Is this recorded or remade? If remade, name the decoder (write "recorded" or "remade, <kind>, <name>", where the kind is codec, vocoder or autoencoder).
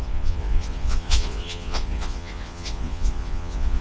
remade, vocoder, Vocos